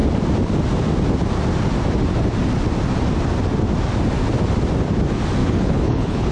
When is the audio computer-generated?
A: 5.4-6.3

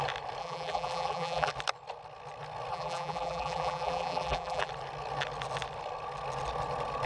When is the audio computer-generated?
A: 0.4-1.5; 2.7-4.7